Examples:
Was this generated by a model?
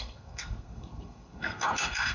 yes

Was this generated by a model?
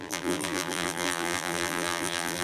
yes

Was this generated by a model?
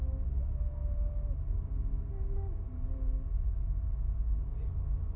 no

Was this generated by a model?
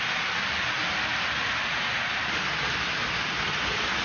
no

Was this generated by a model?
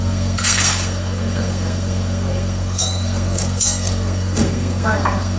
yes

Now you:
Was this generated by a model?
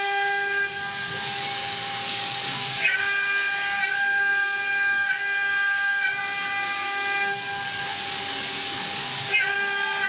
yes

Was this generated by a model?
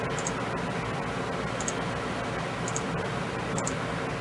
no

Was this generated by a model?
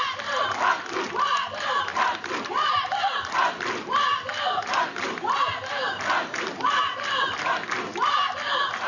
no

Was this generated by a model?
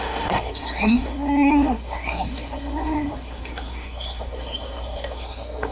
yes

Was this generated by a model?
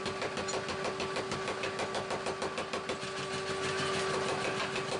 no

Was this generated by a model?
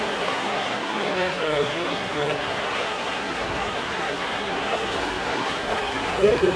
yes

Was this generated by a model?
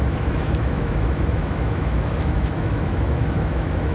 yes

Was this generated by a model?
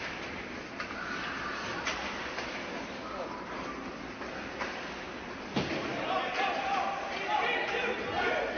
no